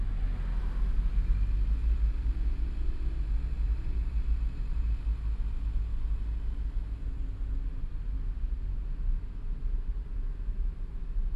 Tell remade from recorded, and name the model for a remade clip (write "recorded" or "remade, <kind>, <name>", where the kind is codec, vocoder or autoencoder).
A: recorded